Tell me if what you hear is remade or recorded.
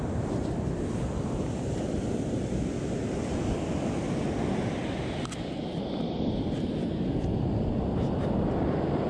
remade